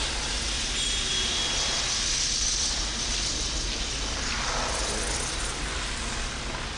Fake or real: real